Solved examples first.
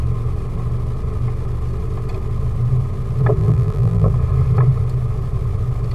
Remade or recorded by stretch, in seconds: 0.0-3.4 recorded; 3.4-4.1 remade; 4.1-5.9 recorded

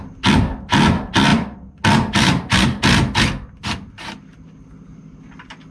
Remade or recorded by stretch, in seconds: 0.0-5.7 recorded

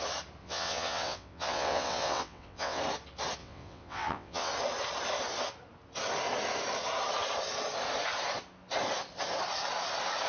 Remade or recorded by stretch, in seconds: 0.0-0.4 recorded; 0.4-2.8 remade; 2.8-3.4 recorded; 3.4-4.5 remade; 4.5-10.3 recorded

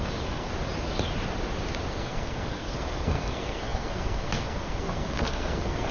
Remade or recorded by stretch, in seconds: 0.0-0.5 remade; 0.5-1.9 recorded; 1.9-5.9 remade

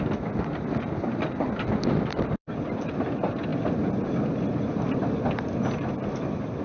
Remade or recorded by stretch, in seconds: 0.0-6.6 remade

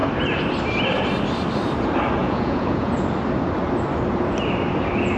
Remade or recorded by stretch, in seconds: 0.0-2.2 recorded; 2.2-3.0 remade; 3.0-5.2 recorded

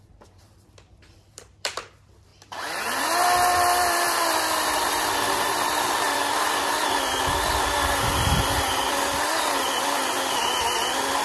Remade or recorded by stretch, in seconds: 0.0-11.2 remade

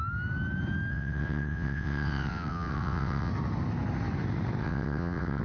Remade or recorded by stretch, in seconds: 0.0-0.9 recorded; 0.9-3.3 remade; 3.3-4.6 recorded; 4.6-5.4 remade